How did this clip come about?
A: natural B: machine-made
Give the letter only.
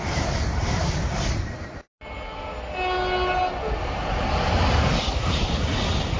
A